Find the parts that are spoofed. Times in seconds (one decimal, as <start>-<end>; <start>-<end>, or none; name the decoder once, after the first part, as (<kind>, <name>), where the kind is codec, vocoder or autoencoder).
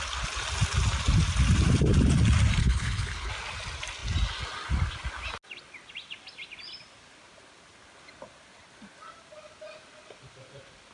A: 2.6-3.3 (codec, HILCodec)